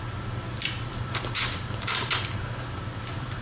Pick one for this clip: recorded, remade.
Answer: remade